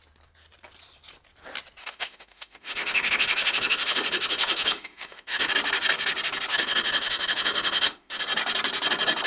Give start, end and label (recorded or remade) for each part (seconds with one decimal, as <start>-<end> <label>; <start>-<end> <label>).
0.0-1.8 recorded; 1.8-5.5 remade; 5.5-6.5 recorded; 6.5-8.2 remade; 8.2-9.3 recorded